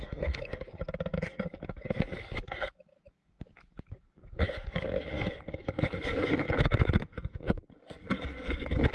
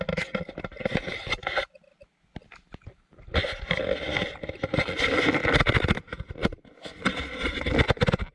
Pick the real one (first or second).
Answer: second